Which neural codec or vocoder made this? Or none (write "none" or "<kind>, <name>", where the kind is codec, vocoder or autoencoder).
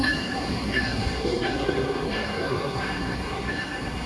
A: codec, SNAC